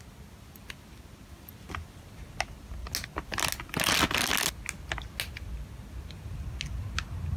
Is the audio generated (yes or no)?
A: no